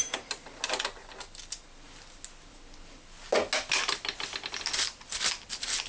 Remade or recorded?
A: recorded